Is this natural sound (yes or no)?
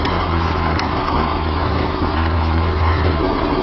no